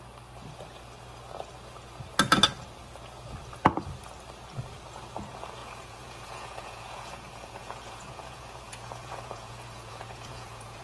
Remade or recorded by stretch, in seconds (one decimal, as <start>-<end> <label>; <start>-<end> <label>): 0.0-5.6 recorded; 5.6-10.8 remade